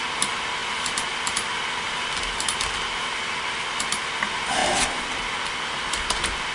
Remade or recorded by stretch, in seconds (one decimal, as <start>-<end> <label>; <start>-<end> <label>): 0.0-0.6 recorded; 0.6-2.7 remade; 2.7-4.6 recorded; 4.6-5.3 remade; 5.3-6.5 recorded